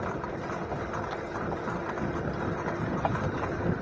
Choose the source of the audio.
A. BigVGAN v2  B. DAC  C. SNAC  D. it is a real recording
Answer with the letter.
D